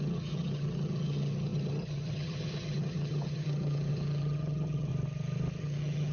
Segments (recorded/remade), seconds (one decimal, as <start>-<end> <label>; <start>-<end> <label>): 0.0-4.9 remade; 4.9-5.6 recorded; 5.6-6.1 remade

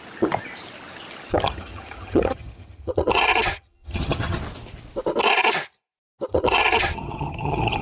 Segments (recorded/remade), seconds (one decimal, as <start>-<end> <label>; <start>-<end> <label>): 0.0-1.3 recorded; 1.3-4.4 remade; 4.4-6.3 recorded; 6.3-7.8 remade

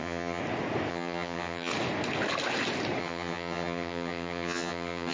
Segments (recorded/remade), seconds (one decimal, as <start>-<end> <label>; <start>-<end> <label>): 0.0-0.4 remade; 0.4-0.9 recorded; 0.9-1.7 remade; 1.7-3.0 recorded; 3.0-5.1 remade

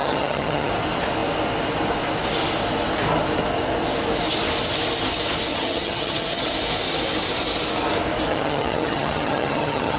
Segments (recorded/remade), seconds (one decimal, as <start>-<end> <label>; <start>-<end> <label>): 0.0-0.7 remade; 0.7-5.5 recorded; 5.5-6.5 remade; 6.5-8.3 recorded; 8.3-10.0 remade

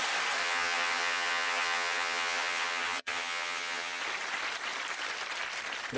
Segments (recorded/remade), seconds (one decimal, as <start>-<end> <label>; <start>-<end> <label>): 0.0-0.4 recorded; 0.4-4.0 remade; 4.0-6.0 recorded